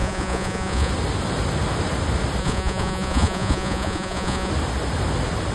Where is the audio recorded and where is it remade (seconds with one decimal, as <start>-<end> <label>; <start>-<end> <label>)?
0.0-0.9 remade; 0.9-2.4 recorded; 2.4-4.5 remade; 4.5-5.5 recorded